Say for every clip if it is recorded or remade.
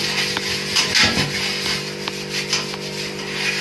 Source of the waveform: recorded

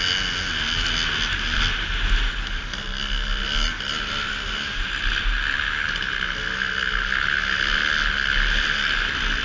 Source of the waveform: recorded